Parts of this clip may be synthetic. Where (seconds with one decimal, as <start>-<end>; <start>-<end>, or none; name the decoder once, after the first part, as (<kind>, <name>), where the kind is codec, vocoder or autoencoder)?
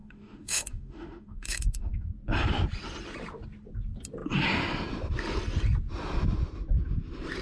0.0-2.1 (autoencoder, DAC-VAE)